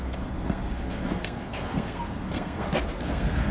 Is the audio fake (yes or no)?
yes